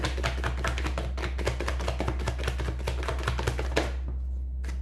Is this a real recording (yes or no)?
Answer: yes